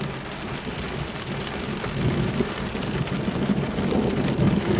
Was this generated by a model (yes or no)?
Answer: no